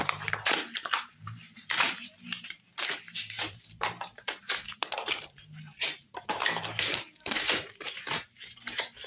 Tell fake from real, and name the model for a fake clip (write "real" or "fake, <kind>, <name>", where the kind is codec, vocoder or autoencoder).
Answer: fake, vocoder, BigVGAN v2